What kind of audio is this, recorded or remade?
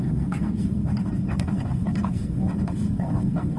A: remade